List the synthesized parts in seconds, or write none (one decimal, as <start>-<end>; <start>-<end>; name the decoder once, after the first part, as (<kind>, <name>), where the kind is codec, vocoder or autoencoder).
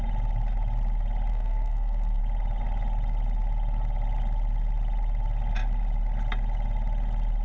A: 1.3-2.2 (codec, SNAC)